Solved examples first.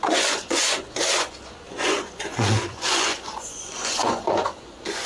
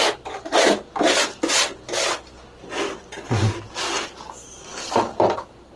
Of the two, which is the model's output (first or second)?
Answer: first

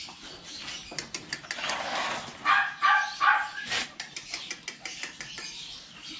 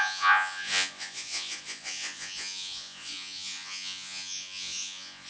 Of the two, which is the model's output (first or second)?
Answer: second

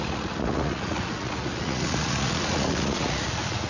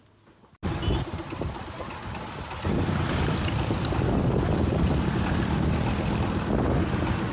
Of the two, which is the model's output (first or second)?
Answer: first